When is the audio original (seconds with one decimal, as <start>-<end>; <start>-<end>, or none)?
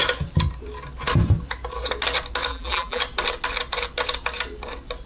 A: 0.0-2.5; 3.0-5.1